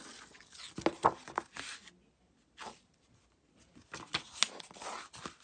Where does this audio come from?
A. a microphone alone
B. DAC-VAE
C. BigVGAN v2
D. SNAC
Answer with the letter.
A